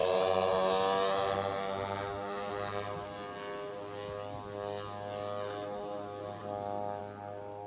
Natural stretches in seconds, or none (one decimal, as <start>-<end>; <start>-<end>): 0.0-7.7